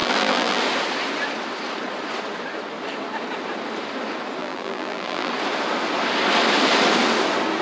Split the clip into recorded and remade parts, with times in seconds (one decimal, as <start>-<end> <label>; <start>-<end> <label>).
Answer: 0.0-0.6 remade; 0.6-4.4 recorded; 4.4-5.3 remade; 5.3-7.6 recorded

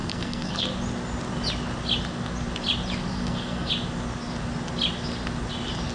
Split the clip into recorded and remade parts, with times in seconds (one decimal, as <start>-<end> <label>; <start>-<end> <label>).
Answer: 0.0-0.7 remade; 0.7-3.1 recorded; 3.1-3.7 remade; 3.7-5.9 recorded

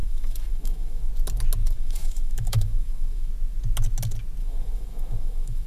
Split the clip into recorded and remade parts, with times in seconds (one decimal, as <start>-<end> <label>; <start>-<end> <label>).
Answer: 0.0-1.1 remade; 1.1-1.6 recorded; 1.6-3.3 remade; 3.3-4.4 recorded; 4.4-5.7 remade

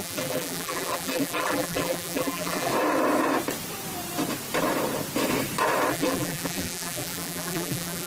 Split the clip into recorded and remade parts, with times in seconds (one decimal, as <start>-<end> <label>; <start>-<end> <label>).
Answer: 0.0-2.7 remade; 2.7-5.9 recorded; 5.9-8.1 remade